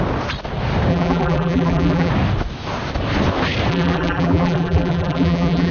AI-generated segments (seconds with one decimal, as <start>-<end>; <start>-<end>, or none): 0.9-2.1; 3.7-5.7